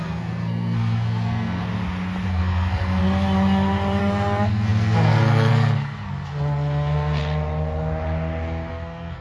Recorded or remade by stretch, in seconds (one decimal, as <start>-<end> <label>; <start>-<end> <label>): 0.0-1.6 remade; 1.6-2.3 recorded; 2.3-3.0 remade; 3.0-4.0 recorded; 4.0-7.2 remade; 7.2-8.7 recorded; 8.7-9.2 remade